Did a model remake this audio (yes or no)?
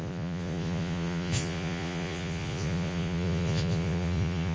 yes